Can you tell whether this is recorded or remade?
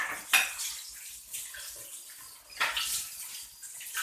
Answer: recorded